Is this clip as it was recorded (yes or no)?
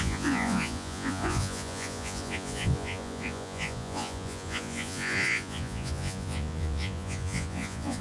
no